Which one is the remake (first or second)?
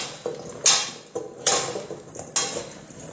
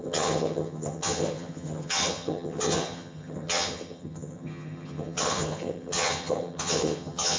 second